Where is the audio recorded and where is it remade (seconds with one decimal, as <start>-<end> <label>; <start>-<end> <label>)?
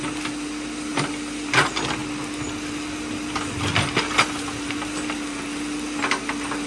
0.0-6.7 recorded